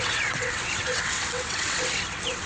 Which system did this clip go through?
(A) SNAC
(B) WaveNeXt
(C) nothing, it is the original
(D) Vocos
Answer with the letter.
B